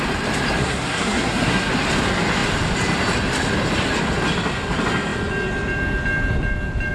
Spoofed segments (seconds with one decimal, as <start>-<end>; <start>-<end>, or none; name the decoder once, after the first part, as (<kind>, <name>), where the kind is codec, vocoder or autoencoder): 0.6-1.7 (codec, SNAC)